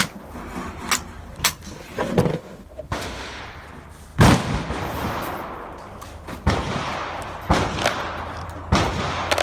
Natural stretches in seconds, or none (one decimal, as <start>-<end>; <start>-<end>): 0.0-2.3; 3.4-9.4